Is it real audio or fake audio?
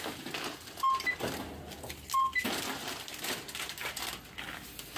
real